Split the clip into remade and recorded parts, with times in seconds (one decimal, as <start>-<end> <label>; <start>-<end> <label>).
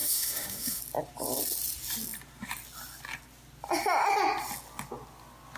0.0-0.8 remade; 0.8-5.6 recorded